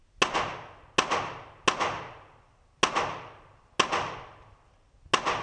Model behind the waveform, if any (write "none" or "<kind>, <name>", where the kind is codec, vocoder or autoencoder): none